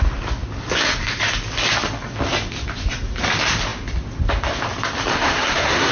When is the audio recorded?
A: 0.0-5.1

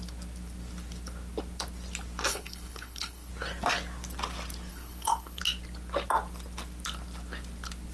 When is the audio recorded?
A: 0.0-2.3; 3.3-4.7; 5.4-7.9